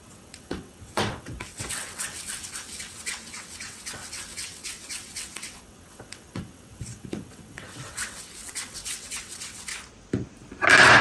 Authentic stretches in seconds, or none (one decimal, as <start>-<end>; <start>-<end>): 9.7-11.0